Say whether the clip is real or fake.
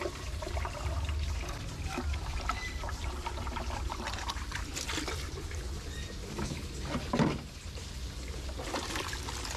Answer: real